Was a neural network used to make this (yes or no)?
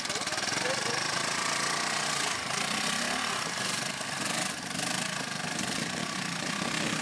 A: no